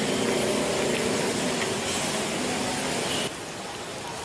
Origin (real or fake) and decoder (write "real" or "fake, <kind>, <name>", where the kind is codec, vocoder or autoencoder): real